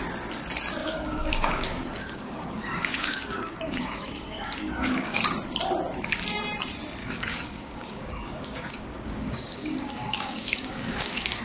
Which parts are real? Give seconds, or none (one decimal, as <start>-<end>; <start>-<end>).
0.0-0.8; 5.2-7.0